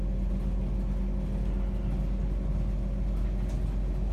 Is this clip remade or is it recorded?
recorded